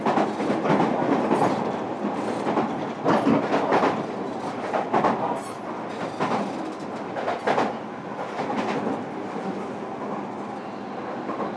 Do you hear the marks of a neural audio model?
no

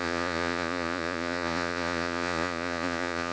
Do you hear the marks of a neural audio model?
yes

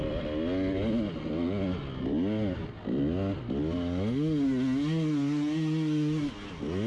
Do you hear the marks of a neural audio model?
no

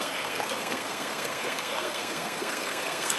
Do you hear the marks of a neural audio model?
yes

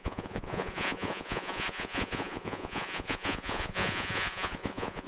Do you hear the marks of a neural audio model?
yes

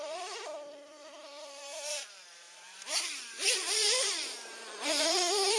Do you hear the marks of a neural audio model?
yes